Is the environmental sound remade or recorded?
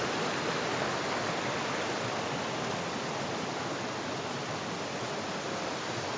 recorded